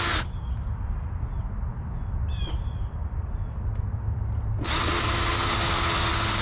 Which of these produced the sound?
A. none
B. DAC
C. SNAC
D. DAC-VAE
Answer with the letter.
A